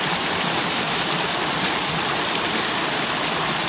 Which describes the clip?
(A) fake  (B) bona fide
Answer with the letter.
B